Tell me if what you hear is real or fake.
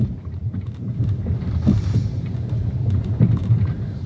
fake